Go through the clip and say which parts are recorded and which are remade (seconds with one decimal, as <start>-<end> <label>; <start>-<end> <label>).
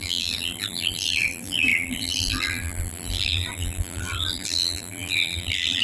0.0-5.8 remade